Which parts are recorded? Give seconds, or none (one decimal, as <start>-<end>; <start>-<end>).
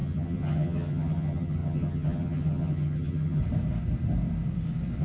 3.4-5.0